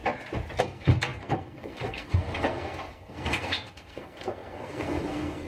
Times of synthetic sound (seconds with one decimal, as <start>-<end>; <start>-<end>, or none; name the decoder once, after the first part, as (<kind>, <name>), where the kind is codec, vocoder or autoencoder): 0.6-5.5 (codec, SNAC)